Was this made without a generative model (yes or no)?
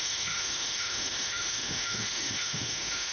no